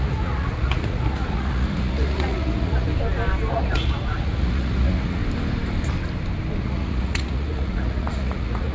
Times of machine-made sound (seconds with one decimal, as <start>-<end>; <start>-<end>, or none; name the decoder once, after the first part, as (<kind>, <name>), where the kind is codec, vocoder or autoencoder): 0.0-2.9 (vocoder, Vocos); 3.5-5.2; 6.6-8.7